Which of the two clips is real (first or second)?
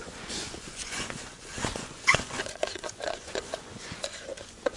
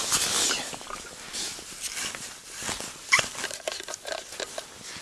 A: second